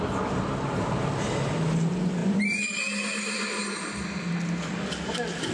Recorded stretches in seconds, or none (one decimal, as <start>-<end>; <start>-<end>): 0.0-5.5